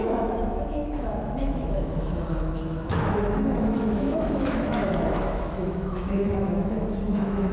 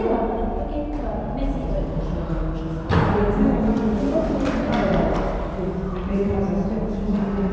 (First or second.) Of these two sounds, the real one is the second